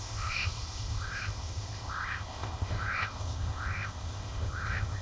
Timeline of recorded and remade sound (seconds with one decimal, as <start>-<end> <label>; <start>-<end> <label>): 0.0-5.0 remade